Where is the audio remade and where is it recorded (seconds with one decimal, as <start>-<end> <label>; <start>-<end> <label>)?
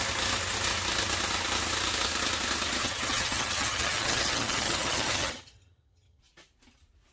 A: 0.0-2.8 recorded; 2.8-6.2 remade; 6.2-7.1 recorded